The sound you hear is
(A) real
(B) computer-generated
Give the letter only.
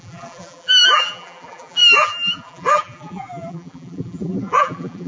B